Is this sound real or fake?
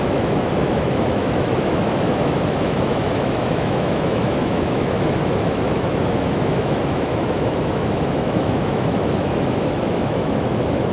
fake